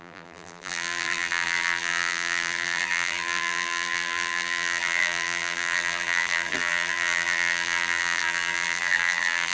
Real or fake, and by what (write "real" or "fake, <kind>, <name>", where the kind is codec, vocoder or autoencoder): fake, vocoder, BigVGAN v2